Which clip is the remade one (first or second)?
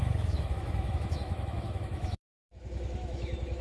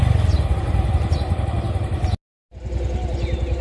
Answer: first